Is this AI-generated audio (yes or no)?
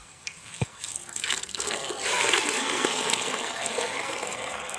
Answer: yes